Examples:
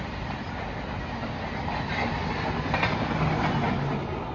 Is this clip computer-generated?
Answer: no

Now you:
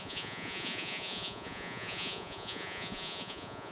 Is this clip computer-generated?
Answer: yes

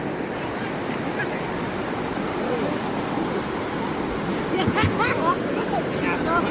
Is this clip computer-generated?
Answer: no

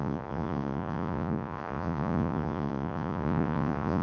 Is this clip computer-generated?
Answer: yes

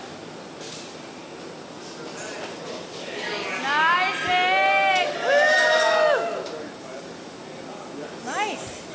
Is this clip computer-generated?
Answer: no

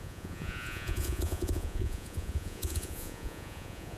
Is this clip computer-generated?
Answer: yes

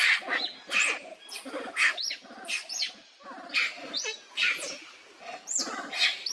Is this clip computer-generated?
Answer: no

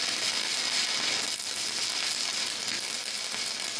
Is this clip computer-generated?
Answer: no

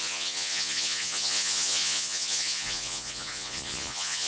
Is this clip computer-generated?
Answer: yes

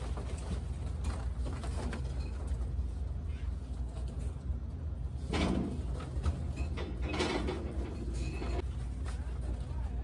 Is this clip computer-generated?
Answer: no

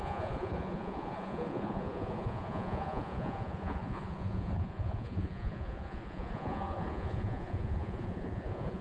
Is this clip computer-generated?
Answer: yes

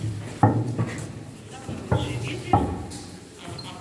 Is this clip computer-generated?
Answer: no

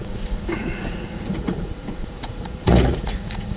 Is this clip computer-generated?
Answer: yes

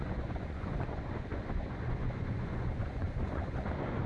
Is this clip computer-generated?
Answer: yes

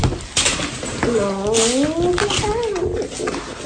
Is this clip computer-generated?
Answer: no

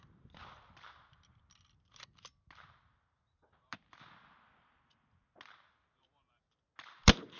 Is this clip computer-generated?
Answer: no